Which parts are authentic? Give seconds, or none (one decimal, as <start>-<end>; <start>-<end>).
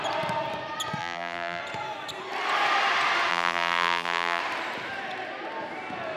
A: 0.0-1.0; 1.6-3.3; 4.4-6.2